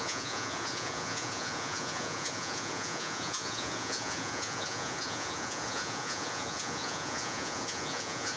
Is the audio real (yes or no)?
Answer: no